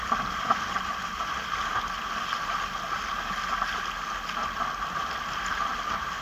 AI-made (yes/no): no